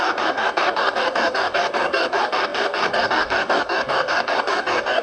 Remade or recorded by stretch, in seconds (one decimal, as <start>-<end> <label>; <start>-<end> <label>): 0.0-5.0 remade